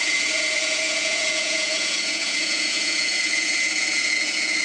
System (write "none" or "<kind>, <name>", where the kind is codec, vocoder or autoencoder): vocoder, Vocos